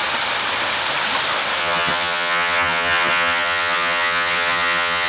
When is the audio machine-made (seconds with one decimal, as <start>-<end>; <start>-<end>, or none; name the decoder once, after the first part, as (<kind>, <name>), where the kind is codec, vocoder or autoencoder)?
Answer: 1.6-5.1 (vocoder, HiFi-GAN)